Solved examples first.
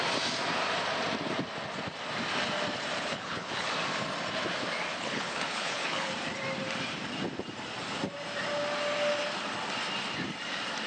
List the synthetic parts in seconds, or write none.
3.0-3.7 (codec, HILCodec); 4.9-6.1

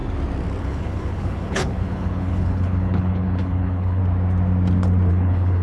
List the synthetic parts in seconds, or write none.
0.6-4.0 (codec, HILCodec); 5.1-5.6